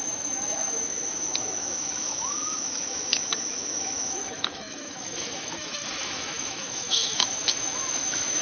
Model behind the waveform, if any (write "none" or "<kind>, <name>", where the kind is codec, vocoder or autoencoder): autoencoder, DAC-VAE